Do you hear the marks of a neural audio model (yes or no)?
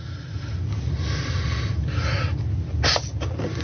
no